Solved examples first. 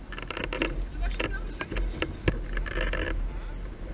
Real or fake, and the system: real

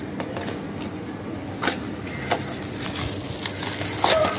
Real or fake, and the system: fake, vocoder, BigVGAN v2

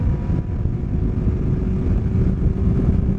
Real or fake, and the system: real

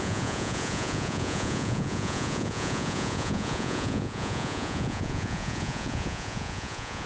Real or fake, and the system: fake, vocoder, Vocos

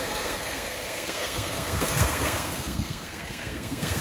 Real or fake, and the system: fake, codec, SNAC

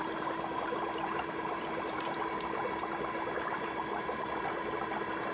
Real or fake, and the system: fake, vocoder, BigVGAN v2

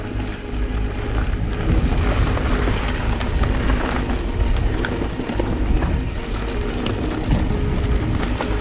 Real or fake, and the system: real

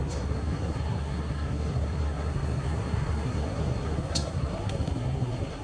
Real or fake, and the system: fake, codec, SNAC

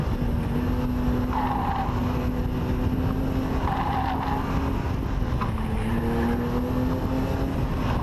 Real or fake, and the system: real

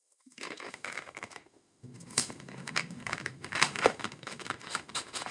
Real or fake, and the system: fake, autoencoder, DAC-VAE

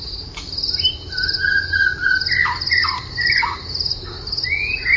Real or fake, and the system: real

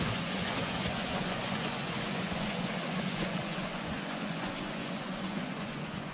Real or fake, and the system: fake, vocoder, Vocos